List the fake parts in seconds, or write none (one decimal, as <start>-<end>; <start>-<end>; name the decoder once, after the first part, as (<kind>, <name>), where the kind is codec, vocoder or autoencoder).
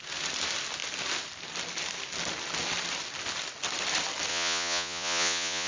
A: 4.3-5.7 (vocoder, Vocos)